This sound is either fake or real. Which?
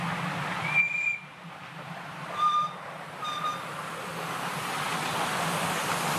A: real